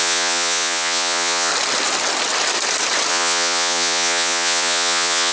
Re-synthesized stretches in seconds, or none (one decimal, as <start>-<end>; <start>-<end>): 0.0-1.5; 3.1-5.3